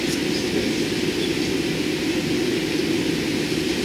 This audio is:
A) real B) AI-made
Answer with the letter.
A